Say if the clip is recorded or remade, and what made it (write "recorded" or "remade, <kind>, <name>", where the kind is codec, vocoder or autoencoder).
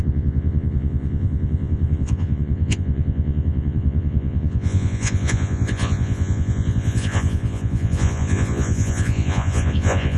remade, vocoder, Vocos